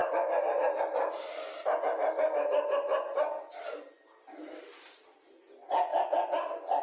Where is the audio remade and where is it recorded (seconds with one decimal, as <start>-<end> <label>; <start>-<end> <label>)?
0.0-6.8 recorded